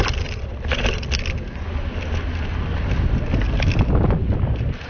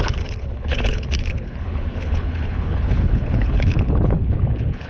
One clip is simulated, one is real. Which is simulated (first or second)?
second